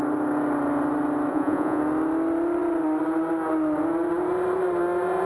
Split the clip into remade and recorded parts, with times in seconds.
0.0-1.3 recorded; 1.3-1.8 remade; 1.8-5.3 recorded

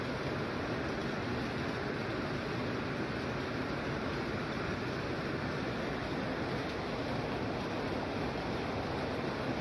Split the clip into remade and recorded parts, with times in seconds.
0.0-9.6 recorded

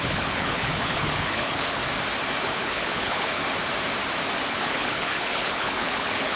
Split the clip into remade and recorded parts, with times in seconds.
0.0-1.8 remade; 1.8-2.4 recorded; 2.4-3.4 remade; 3.4-4.5 recorded; 4.5-6.4 remade

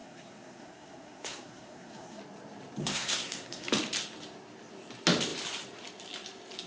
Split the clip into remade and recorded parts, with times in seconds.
0.0-2.2 remade; 2.2-2.8 recorded; 2.8-3.7 remade; 3.7-6.7 recorded

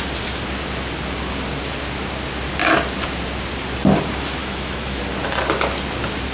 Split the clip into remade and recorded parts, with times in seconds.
0.0-4.4 recorded; 4.4-5.0 remade; 5.0-6.3 recorded